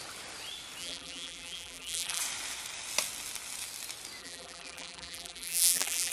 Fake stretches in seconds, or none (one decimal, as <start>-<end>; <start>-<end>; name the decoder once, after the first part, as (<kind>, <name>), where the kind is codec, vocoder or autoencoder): 0.8-2.2 (vocoder, BigVGAN v2); 4.2-6.1